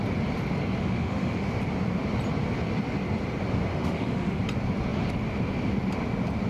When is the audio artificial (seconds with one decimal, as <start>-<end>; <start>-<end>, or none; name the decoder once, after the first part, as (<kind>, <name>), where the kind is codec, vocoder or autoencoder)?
0.8-1.6 (autoencoder, DAC-VAE); 3.7-4.4